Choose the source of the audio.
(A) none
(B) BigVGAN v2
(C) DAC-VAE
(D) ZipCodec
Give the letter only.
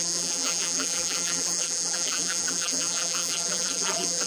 B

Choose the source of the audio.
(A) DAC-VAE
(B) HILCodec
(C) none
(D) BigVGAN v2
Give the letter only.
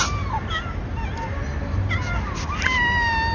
C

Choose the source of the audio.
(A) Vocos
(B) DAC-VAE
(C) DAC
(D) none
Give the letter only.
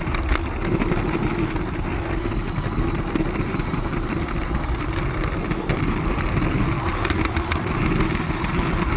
D